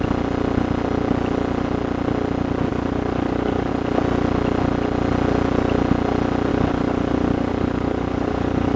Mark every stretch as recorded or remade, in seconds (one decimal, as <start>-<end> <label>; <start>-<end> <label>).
0.0-2.7 recorded; 2.7-3.7 remade; 3.7-6.5 recorded; 6.5-8.8 remade